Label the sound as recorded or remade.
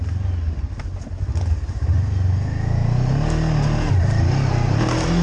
recorded